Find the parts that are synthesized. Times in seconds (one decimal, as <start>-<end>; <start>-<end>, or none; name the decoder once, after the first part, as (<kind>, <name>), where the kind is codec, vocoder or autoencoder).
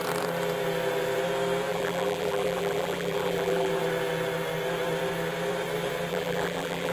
1.7-3.7 (vocoder, BigVGAN v2); 6.1-6.9